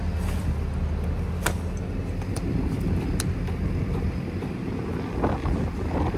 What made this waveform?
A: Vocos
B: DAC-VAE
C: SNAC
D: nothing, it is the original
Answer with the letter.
D